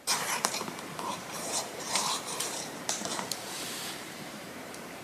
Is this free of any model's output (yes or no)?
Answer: no